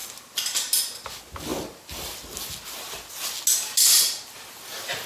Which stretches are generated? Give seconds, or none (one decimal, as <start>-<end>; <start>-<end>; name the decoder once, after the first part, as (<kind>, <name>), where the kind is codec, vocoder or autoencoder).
none